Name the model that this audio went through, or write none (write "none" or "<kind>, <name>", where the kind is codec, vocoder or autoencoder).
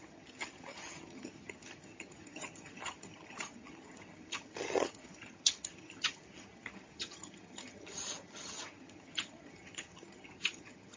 vocoder, HiFi-GAN